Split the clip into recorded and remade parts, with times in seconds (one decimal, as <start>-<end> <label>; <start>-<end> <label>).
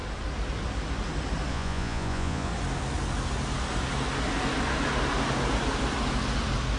0.0-1.5 recorded; 1.5-2.5 remade; 2.5-6.8 recorded